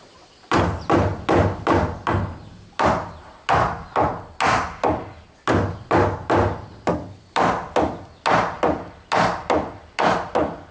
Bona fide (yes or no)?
yes